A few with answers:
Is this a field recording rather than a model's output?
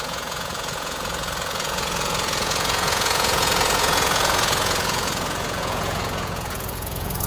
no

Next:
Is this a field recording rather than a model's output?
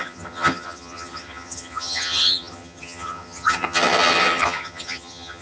no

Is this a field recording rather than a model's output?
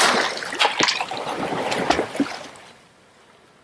yes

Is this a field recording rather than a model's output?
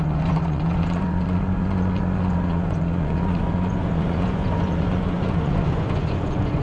no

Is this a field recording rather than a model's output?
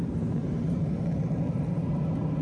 yes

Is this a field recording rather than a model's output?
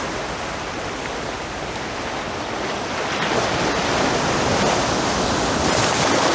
yes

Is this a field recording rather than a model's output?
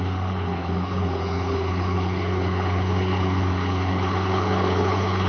no